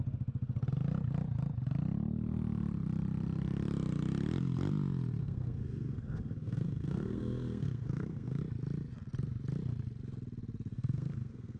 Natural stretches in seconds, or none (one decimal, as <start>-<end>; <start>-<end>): 0.0-5.2; 8.4-10.7